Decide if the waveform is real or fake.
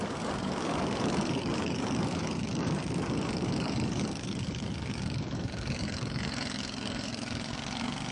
fake